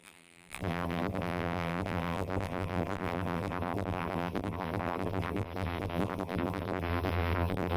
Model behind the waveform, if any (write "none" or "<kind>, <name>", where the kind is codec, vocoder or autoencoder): vocoder, BigVGAN v2